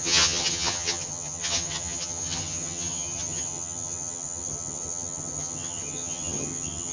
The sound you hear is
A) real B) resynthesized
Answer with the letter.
B